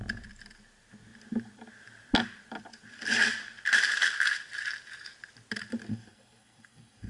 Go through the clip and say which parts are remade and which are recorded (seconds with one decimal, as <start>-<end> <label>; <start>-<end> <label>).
0.0-5.9 recorded; 5.9-7.1 remade